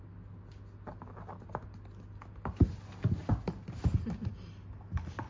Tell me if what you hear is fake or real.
real